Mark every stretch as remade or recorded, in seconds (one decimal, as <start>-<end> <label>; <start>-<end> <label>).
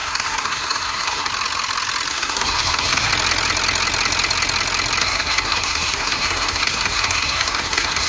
0.0-1.3 remade; 1.3-2.1 recorded; 2.1-3.1 remade; 3.1-5.0 recorded; 5.0-8.1 remade